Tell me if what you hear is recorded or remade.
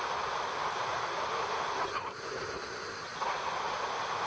recorded